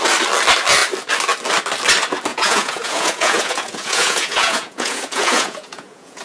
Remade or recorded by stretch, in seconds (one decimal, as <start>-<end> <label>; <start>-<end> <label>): 0.0-2.3 recorded; 2.3-6.2 remade